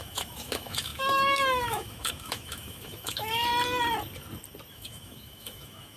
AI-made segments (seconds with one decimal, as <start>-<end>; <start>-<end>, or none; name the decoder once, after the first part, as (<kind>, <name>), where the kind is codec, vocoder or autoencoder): 0.0-3.5 (autoencoder, DAC-VAE); 4.7-6.0